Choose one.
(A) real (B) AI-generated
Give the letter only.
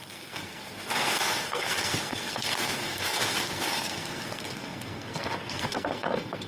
B